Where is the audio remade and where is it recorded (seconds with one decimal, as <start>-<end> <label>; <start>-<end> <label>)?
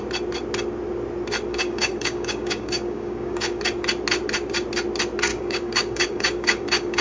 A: 0.0-1.5 recorded; 1.5-3.6 remade; 3.6-5.3 recorded; 5.3-7.0 remade